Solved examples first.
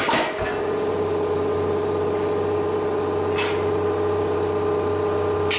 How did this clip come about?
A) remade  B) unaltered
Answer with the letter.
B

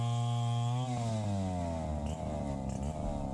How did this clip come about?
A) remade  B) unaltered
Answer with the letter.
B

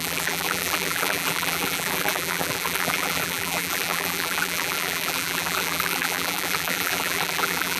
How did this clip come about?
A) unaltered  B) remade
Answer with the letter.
B